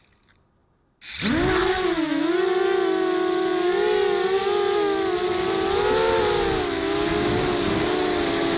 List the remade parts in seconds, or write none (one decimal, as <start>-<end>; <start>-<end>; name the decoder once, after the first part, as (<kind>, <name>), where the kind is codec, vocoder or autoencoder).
none